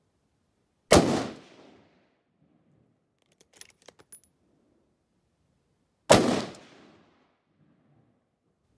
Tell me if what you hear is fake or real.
real